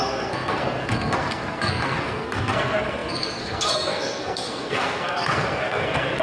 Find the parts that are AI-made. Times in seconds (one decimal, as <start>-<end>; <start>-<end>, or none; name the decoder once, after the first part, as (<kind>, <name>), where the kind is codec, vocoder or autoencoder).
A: 0.0-6.2 (codec, SNAC)